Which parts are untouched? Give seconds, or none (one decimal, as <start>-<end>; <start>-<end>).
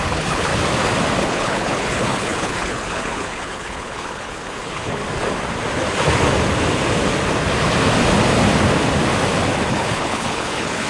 0.5-1.2; 5.0-9.7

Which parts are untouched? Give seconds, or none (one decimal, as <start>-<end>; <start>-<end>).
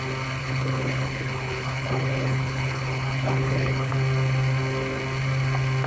0.0-0.4; 3.9-5.9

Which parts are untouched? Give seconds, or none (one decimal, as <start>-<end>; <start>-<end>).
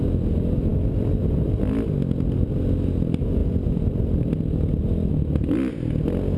0.0-6.4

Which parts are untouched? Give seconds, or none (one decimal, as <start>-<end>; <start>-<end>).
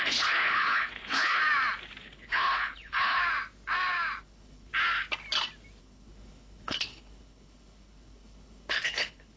1.4-2.0; 3.2-4.2; 4.7-5.8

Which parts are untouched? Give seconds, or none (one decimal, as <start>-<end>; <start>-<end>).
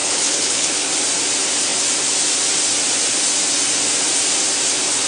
0.9-5.1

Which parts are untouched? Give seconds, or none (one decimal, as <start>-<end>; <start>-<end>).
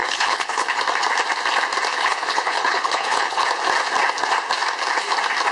0.8-1.9; 3.4-5.5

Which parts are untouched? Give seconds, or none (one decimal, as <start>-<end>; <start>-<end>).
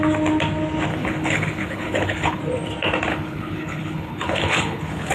0.0-0.9; 2.4-3.1